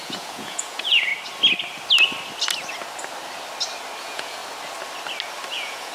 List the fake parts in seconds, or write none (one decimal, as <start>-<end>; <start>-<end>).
0.0-1.1; 4.0-4.4; 5.5-5.9